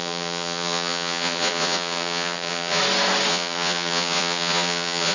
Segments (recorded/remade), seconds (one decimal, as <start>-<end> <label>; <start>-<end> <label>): 0.0-2.8 remade; 2.8-3.3 recorded; 3.3-5.1 remade